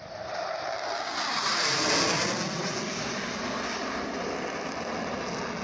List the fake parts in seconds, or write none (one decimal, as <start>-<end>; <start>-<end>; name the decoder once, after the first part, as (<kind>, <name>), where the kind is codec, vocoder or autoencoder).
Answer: none